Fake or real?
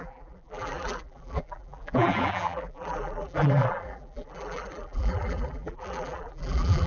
fake